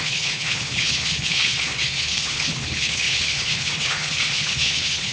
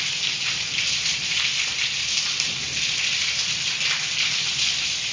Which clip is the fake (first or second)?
first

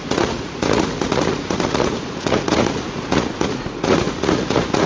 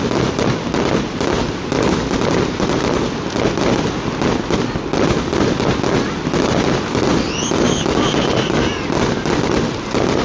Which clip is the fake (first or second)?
first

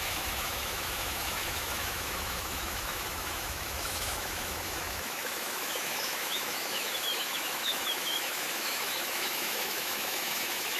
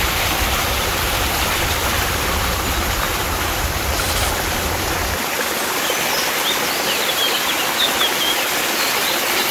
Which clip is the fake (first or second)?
first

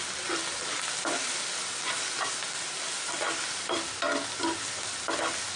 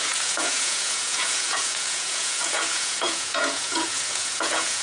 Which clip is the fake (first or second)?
second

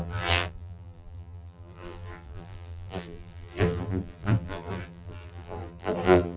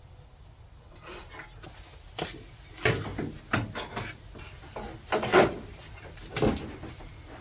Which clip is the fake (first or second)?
first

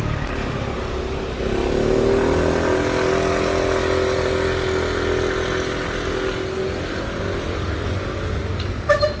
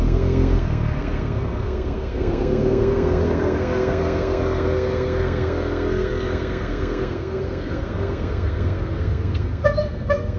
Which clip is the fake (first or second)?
second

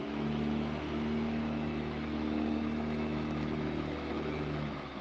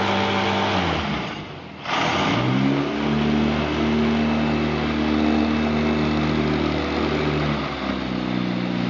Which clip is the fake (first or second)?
first